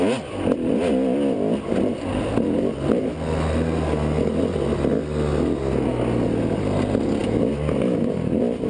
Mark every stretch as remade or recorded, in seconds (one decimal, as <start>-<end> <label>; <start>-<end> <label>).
0.0-8.7 recorded